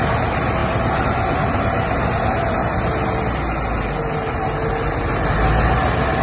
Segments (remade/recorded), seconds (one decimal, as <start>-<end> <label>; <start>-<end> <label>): 0.0-6.2 recorded